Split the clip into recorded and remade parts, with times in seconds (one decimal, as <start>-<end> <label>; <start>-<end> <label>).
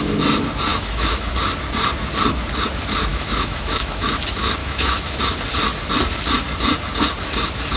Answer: 0.0-0.7 recorded; 0.7-1.3 remade; 1.3-3.1 recorded; 3.1-4.1 remade; 4.1-4.6 recorded; 4.6-5.2 remade; 5.2-7.8 recorded